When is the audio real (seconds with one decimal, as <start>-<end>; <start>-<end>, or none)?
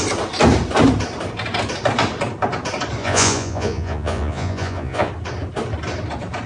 0.0-3.0; 5.1-6.5